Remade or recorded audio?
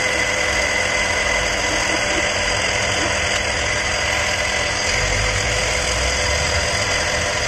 recorded